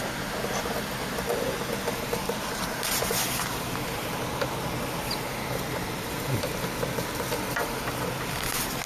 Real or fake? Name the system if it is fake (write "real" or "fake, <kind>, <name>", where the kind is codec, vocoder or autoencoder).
real